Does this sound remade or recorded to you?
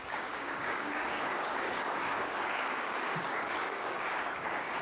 remade